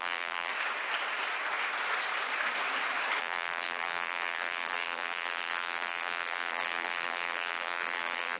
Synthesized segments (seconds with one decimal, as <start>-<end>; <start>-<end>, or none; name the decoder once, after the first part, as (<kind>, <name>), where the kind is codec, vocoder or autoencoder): 0.0-0.5 (vocoder, BigVGAN v2); 3.2-8.4